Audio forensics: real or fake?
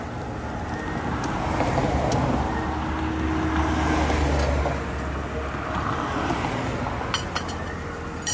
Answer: real